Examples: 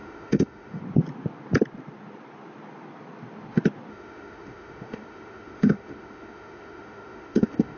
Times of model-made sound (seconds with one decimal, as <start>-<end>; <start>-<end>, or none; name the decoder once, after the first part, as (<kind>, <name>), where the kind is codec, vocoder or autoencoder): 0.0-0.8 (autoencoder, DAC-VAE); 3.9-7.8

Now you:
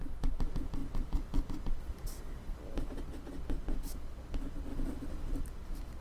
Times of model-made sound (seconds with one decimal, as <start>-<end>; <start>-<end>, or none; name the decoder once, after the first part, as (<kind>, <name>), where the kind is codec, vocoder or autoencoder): 0.8-3.0 (vocoder, BigVGAN v2); 4.7-5.4

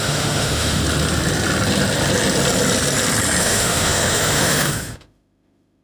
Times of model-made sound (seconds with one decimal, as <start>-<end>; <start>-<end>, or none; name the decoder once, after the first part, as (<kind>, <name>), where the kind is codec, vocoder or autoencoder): 0.0-0.8 (autoencoder, DAC-VAE); 3.4-5.8